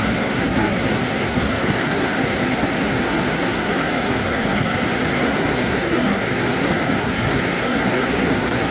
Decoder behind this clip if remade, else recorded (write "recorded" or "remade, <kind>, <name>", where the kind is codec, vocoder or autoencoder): remade, codec, SNAC